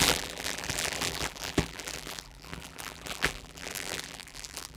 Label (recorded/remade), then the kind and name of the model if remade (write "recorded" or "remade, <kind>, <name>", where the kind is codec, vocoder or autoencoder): remade, vocoder, BigVGAN v2